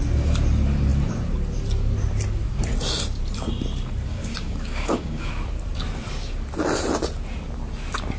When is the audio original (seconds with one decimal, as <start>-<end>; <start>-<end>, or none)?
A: 0.0-4.1; 5.3-8.2